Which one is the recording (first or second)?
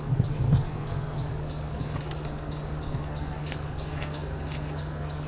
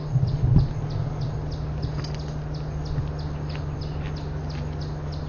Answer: second